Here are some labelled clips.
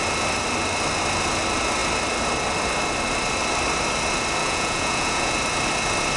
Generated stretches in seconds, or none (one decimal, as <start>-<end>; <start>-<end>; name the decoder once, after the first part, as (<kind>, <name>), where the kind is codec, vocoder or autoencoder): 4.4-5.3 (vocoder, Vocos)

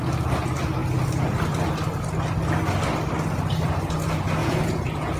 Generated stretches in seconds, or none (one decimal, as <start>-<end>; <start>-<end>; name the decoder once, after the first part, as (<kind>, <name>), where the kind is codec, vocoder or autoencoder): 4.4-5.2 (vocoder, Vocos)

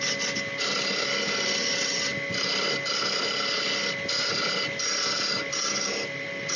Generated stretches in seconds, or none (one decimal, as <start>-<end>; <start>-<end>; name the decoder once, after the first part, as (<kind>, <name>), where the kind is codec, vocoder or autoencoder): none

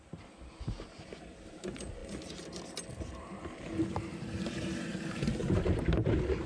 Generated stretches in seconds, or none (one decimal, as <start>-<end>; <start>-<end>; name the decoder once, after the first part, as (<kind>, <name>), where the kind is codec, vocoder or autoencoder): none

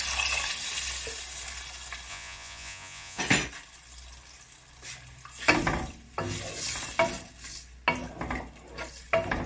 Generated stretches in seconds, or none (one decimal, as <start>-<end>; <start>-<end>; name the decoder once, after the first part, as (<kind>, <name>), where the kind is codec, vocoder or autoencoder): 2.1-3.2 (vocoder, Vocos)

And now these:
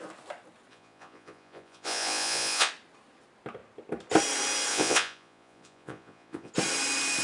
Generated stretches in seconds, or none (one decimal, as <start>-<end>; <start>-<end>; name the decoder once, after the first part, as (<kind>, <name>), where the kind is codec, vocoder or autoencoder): 0.7-2.7 (vocoder, Vocos); 4.7-6.5

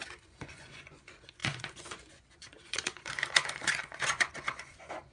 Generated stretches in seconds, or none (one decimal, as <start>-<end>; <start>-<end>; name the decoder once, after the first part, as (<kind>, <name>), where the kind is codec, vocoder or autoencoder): 0.0-5.1 (vocoder, Vocos)

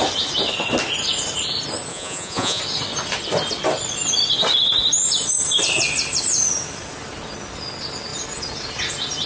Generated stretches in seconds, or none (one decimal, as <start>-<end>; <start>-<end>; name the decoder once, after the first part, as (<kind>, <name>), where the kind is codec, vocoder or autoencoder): 1.9-2.6 (vocoder, Vocos)